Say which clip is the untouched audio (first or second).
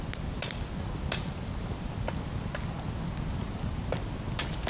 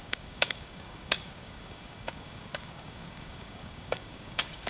first